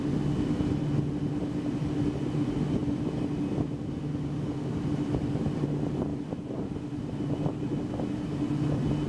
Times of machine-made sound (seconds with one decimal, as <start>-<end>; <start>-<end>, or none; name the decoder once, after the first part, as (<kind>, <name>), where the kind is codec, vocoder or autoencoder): none